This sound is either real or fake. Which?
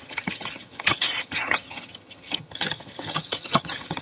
fake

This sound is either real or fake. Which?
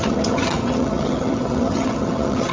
fake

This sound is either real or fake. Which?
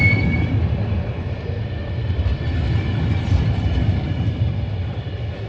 real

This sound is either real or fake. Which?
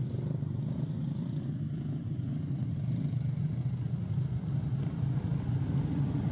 real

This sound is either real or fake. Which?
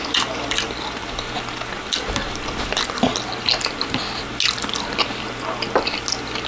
real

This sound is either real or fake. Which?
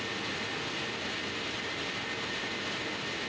real